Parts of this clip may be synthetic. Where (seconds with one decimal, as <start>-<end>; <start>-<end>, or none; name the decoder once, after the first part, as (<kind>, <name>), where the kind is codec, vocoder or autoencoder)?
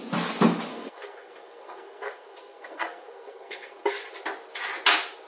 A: 0.7-3.9 (codec, SNAC)